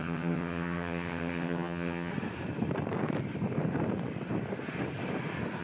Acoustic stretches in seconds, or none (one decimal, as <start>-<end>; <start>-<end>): 2.1-5.6